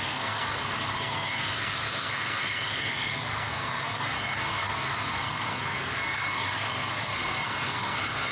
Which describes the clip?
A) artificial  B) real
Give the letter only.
A